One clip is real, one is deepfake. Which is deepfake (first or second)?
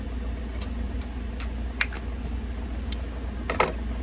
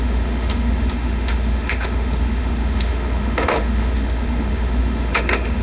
second